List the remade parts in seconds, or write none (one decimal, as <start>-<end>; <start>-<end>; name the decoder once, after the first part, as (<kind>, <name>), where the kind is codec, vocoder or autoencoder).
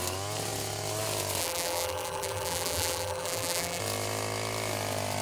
1.4-3.8 (vocoder, BigVGAN v2)